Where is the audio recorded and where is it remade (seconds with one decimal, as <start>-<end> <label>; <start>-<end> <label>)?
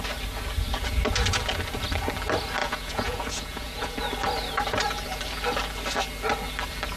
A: 0.0-2.6 recorded; 2.6-4.0 remade; 4.0-7.0 recorded